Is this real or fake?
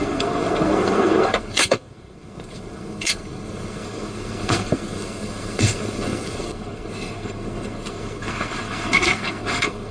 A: fake